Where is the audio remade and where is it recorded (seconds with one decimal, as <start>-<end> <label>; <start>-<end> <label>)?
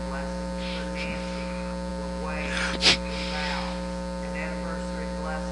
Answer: 0.0-5.5 recorded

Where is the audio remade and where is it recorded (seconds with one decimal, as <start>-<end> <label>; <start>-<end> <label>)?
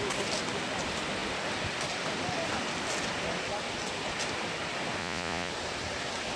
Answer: 0.0-5.0 recorded; 5.0-5.5 remade; 5.5-6.4 recorded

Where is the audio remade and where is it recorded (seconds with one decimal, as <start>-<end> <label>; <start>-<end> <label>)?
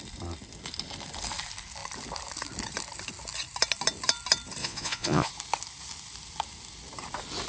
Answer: 0.0-4.6 recorded; 4.6-5.3 remade; 5.3-7.5 recorded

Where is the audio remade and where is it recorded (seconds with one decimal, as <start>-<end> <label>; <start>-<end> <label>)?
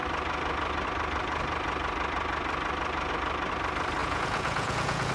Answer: 0.0-4.0 recorded; 4.0-5.1 remade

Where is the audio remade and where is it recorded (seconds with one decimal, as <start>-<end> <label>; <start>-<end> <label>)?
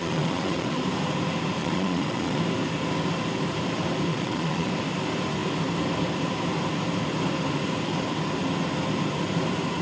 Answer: 0.0-0.8 remade; 0.8-1.6 recorded; 1.6-2.4 remade; 2.4-4.1 recorded; 4.1-4.7 remade; 4.7-9.8 recorded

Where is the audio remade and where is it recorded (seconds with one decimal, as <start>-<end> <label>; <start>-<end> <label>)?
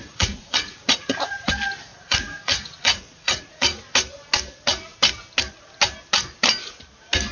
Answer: 0.0-1.3 remade; 1.3-1.9 recorded; 1.9-3.8 remade; 3.8-7.3 recorded